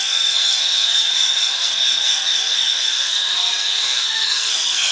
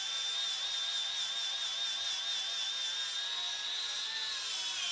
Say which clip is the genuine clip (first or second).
second